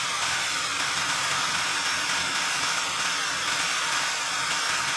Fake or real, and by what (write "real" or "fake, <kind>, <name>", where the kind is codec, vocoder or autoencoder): real